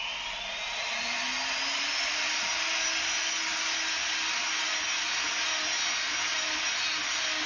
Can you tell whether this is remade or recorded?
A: recorded